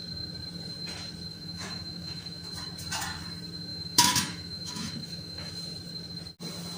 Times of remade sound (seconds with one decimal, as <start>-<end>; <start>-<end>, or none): 1.3-2.5; 3.7-5.5